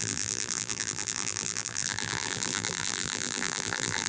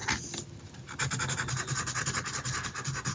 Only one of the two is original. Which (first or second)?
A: second